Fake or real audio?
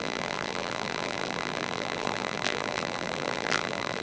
fake